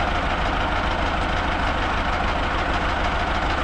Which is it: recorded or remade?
recorded